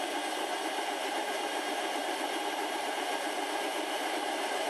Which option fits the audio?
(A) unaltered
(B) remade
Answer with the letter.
B